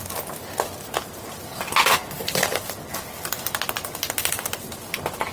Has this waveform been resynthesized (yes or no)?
no